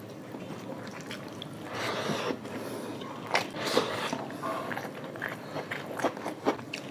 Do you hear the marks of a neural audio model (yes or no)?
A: no